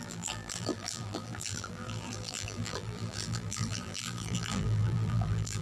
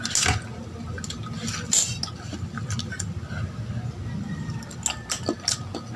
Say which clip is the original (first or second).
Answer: second